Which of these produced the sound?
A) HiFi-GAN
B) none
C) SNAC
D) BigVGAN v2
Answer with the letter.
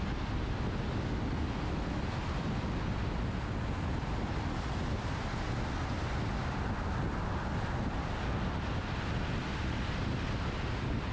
B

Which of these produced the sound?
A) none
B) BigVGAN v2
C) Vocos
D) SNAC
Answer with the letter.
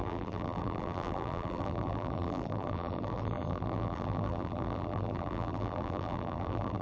B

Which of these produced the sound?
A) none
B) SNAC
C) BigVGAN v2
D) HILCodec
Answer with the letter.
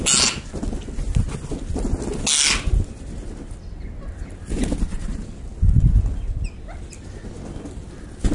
A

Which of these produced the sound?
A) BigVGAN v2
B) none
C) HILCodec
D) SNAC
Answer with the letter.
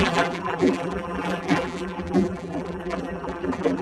A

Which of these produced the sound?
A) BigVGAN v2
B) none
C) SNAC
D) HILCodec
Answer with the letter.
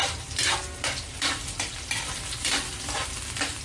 A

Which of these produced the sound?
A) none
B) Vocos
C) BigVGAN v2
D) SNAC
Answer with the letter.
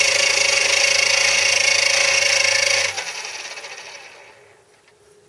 A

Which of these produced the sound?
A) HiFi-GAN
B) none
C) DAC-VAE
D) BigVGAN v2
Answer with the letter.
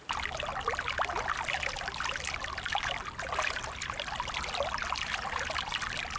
B